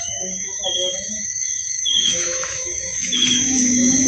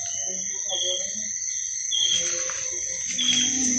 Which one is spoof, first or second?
first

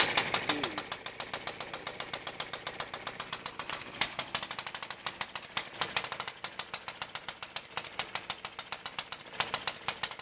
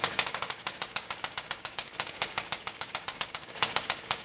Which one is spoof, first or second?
second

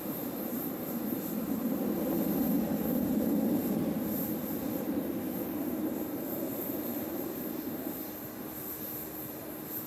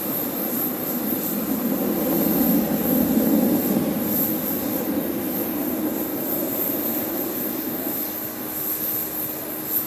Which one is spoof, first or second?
first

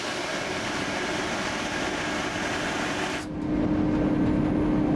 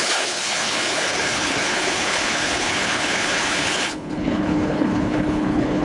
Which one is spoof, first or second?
second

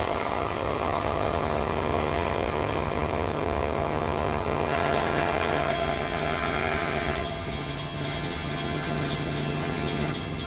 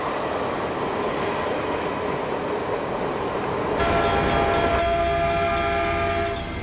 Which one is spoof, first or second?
first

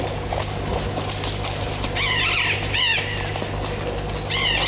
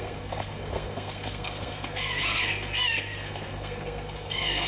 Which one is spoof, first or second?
second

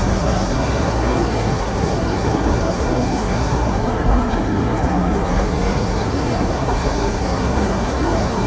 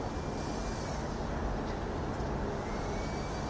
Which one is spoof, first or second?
first